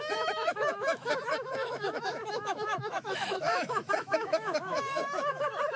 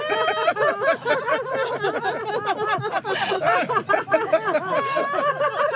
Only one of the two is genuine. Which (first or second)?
second